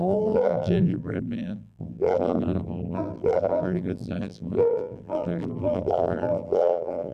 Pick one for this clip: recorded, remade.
remade